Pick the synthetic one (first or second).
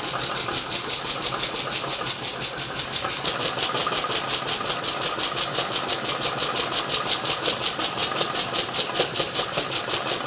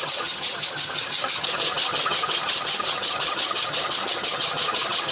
second